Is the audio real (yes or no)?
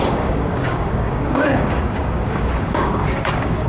no